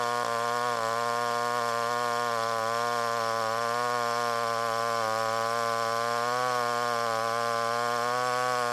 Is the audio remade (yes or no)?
no